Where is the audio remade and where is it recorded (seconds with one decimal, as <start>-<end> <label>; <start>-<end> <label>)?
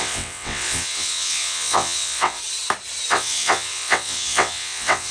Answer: 0.0-2.4 remade; 2.4-3.1 recorded; 3.1-5.1 remade